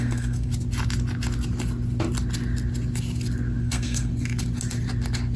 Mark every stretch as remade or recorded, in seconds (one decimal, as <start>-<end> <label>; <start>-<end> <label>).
0.0-0.5 remade; 0.5-3.6 recorded; 3.6-4.1 remade; 4.1-5.4 recorded